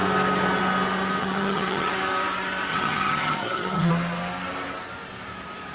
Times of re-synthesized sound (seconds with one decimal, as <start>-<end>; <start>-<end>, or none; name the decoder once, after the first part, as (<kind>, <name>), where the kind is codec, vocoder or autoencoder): 1.2-1.9 (vocoder, HiFi-GAN); 2.7-3.9